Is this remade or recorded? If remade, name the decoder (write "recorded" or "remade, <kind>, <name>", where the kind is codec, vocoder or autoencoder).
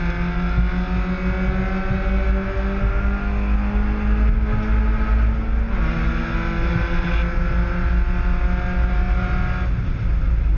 recorded